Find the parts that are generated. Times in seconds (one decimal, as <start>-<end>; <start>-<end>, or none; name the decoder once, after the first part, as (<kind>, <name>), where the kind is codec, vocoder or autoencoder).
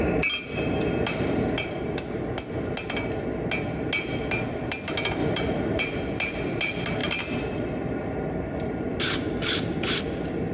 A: 5.2-5.8 (vocoder, BigVGAN v2); 7.0-10.0